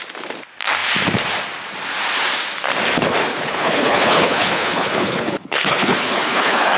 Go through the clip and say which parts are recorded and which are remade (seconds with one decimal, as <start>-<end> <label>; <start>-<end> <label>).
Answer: 0.0-3.3 recorded; 3.3-6.8 remade